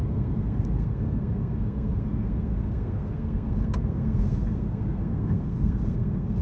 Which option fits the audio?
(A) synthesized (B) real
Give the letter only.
A